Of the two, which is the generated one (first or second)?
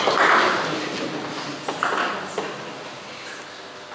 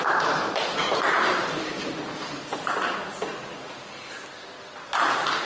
second